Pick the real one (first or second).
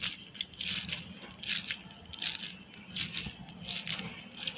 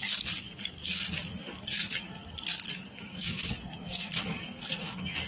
first